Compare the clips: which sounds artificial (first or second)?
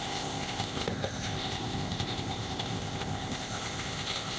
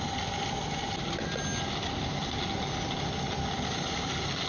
first